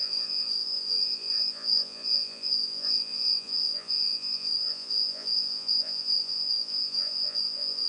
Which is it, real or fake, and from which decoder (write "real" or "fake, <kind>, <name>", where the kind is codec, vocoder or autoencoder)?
fake, vocoder, Vocos